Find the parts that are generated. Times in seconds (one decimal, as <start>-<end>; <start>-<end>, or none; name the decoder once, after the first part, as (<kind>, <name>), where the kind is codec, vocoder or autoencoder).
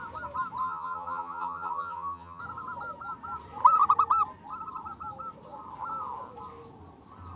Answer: 0.6-2.4 (vocoder, HiFi-GAN)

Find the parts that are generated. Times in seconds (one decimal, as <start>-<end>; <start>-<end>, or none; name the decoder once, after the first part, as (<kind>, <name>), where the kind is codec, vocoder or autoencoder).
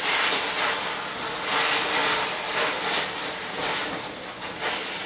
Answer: none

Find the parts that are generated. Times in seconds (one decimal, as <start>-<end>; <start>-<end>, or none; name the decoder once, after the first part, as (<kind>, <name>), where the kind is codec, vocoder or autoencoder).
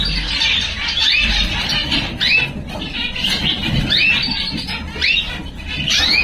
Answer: 1.0-2.4 (vocoder, BigVGAN v2); 3.0-4.7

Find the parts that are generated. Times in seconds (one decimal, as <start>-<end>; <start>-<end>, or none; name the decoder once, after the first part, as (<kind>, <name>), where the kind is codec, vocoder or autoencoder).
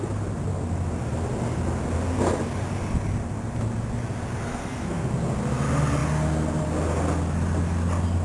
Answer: 4.5-5.1 (codec, SNAC)